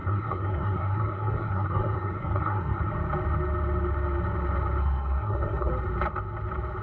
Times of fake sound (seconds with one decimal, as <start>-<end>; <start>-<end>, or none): 0.0-2.9; 4.8-5.7